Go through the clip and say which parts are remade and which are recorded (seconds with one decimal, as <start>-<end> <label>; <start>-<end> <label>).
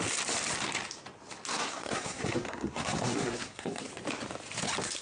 0.0-1.5 recorded; 1.5-3.9 remade; 3.9-5.0 recorded